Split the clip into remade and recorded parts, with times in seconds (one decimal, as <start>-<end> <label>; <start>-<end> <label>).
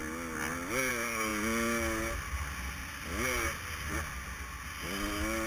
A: 0.0-5.5 recorded